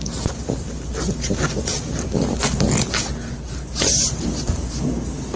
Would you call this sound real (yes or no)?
yes